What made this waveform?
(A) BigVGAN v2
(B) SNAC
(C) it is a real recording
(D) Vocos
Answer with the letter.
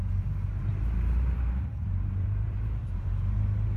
A